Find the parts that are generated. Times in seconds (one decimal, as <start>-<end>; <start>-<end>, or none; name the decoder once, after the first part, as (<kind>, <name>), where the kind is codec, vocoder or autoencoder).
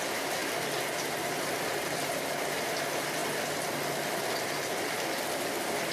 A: 1.7-2.7 (vocoder, BigVGAN v2)